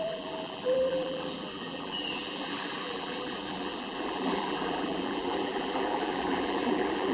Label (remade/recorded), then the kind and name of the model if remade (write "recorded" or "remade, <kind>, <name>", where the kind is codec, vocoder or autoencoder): remade, vocoder, BigVGAN v2